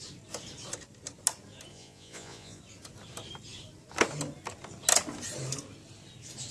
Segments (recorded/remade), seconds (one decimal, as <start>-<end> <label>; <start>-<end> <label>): 0.0-1.7 recorded; 1.7-2.6 remade; 2.6-6.5 recorded